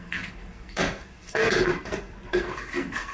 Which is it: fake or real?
fake